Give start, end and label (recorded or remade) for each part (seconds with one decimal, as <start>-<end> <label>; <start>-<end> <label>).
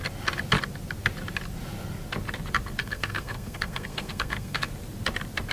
0.0-2.8 recorded; 2.8-4.7 remade; 4.7-5.5 recorded